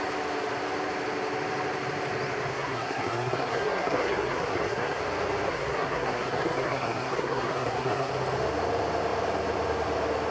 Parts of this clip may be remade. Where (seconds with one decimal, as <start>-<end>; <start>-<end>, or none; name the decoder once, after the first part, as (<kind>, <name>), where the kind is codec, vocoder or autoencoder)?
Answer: 2.5-5.0 (codec, SNAC); 5.5-8.1